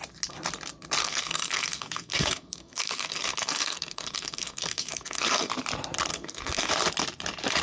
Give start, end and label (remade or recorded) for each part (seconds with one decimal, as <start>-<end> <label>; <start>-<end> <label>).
0.0-1.0 recorded; 1.0-5.5 remade; 5.5-6.1 recorded; 6.1-6.7 remade; 6.7-7.6 recorded